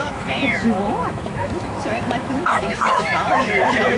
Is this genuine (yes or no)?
no